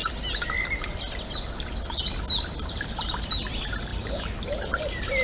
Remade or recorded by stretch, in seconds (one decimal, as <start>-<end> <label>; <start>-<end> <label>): 0.0-5.2 recorded